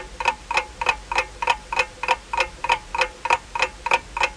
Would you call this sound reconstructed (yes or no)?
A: no